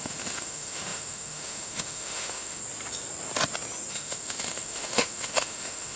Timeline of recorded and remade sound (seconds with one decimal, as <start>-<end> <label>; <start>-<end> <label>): 0.0-2.6 remade; 2.6-3.9 recorded; 3.9-6.0 remade